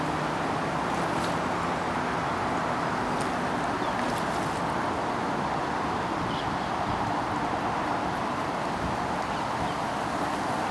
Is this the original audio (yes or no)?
yes